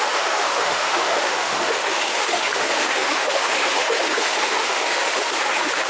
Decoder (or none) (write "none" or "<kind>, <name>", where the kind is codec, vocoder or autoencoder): autoencoder, DAC-VAE